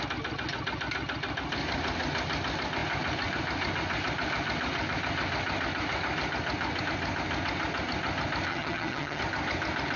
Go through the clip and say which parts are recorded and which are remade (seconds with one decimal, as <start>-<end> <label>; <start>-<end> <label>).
0.0-8.5 recorded; 8.5-9.2 remade; 9.2-10.0 recorded